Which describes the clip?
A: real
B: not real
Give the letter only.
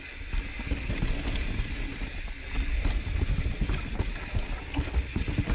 A